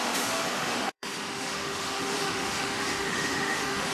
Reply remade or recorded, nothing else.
remade